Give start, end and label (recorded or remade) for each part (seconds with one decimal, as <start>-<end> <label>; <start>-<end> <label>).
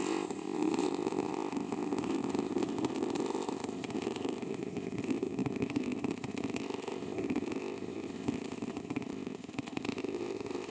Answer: 0.0-10.7 remade